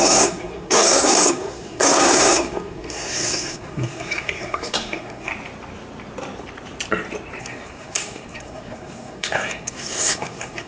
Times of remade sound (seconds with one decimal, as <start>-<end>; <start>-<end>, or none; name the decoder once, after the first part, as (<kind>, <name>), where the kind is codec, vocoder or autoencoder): 0.0-5.3 (codec, SNAC); 7.4-10.7